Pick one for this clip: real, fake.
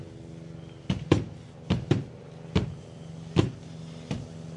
real